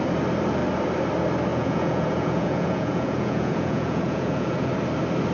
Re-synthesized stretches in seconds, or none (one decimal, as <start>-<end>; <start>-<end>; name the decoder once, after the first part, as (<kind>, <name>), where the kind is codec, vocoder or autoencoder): 1.5-4.7 (vocoder, Vocos)